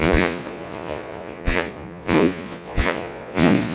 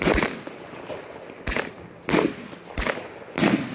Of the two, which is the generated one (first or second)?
first